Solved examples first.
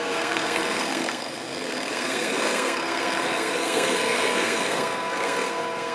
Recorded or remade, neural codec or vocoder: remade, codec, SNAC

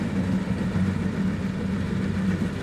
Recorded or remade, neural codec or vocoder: recorded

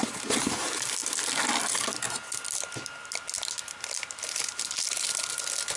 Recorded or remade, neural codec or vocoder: recorded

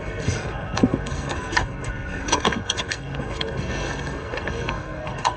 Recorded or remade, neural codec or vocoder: remade, codec, SNAC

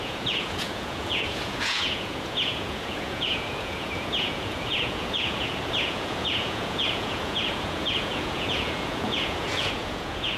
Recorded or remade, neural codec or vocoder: remade, vocoder, Vocos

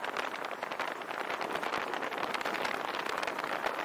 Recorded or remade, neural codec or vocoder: recorded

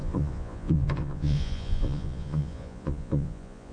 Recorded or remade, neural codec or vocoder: remade, vocoder, Vocos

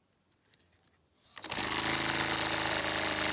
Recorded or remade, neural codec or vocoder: remade, vocoder, BigVGAN v2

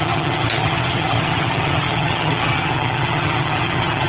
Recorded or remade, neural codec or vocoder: remade, vocoder, HiFi-GAN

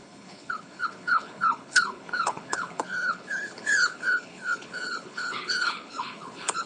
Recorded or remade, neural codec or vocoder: remade, codec, HILCodec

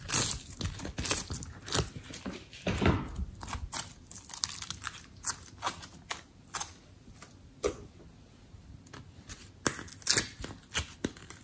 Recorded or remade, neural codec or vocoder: recorded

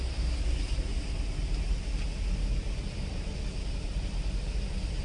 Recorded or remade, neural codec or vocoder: recorded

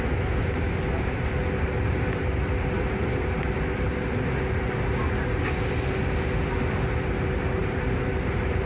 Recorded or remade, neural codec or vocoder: recorded